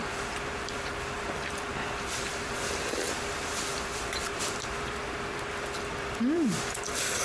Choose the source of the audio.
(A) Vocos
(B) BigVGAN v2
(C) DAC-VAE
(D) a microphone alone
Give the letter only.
B